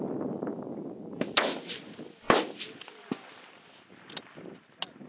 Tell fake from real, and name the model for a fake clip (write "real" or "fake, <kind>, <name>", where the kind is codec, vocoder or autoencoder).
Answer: real